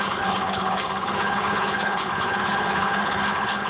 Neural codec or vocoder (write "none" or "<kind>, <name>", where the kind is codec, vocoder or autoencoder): codec, HILCodec